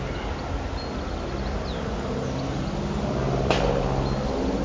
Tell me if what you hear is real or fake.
real